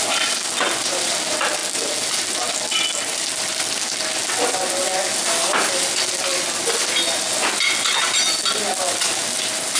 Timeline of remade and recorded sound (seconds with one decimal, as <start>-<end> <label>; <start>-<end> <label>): 0.0-9.8 recorded